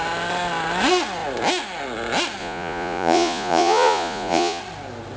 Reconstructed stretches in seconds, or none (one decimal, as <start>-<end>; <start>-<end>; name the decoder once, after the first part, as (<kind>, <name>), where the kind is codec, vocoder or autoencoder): 2.4-4.6 (vocoder, Vocos)